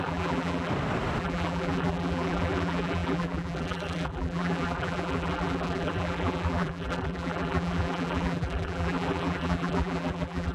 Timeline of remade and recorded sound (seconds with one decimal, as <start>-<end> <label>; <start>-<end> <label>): 0.0-0.7 remade; 0.7-1.2 recorded; 1.2-10.5 remade